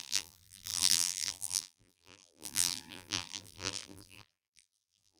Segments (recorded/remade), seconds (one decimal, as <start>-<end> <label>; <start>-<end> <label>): 0.0-5.2 remade